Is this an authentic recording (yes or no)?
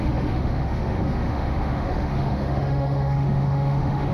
no